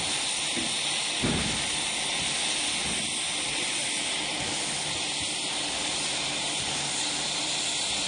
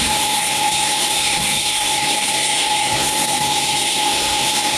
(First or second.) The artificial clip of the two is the second